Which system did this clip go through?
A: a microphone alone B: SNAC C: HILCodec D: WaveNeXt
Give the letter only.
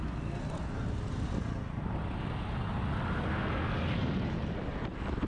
A